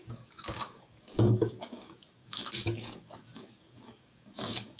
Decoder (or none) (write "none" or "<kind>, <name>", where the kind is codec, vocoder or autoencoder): codec, DAC